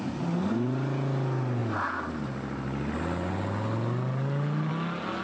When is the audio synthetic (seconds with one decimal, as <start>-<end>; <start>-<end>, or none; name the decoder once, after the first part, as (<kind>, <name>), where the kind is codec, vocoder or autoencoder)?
none